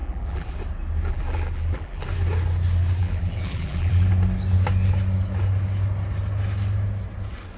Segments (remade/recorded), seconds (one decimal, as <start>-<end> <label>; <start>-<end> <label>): 0.0-0.6 remade; 0.6-1.1 recorded; 1.1-2.1 remade; 2.1-3.0 recorded; 3.0-4.1 remade; 4.1-7.6 recorded